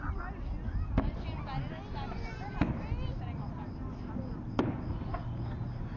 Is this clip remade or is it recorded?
recorded